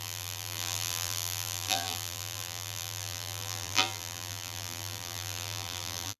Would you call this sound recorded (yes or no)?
no